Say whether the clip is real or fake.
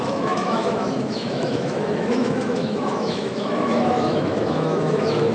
fake